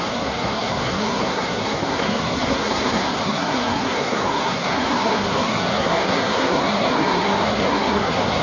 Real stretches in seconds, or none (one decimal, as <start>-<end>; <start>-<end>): none